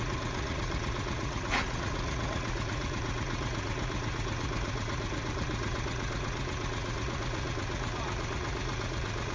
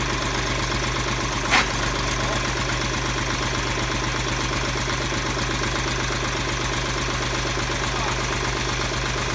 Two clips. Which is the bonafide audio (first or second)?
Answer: second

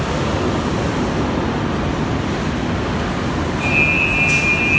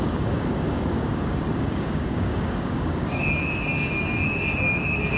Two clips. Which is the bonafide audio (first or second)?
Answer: first